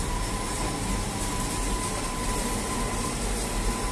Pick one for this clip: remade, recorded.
recorded